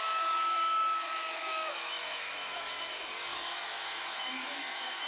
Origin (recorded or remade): remade